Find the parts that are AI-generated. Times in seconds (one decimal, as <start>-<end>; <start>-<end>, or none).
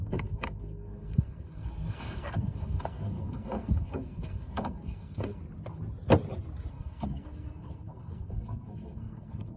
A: 0.0-5.4; 6.7-9.6